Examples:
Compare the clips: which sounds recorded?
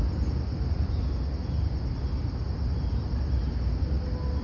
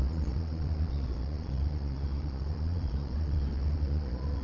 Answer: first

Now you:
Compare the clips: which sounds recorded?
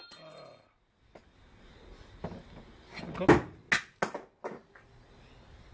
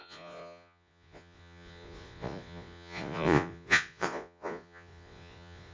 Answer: first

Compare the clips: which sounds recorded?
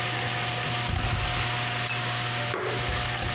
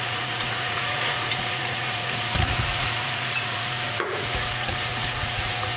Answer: first